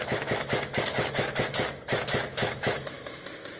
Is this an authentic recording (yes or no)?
no